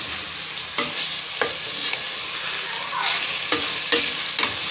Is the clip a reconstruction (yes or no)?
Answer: no